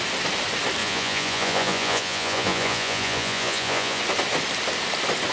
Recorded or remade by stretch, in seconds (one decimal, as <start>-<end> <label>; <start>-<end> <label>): 0.0-0.8 recorded; 0.8-4.0 remade; 4.0-5.3 recorded